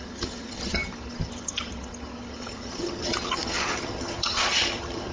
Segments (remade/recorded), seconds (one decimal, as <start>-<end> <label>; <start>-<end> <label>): 0.0-5.1 remade